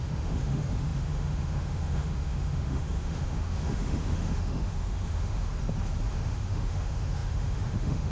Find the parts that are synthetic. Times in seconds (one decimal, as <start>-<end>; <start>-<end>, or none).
0.0-5.5; 6.1-8.1